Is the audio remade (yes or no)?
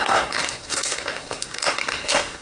yes